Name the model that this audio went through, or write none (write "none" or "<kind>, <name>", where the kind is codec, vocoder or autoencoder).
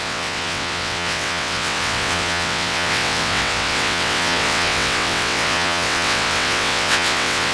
vocoder, WaveNeXt